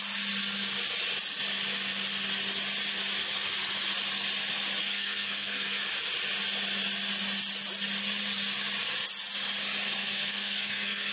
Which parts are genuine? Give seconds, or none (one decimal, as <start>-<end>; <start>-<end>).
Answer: 0.0-4.8; 5.8-10.0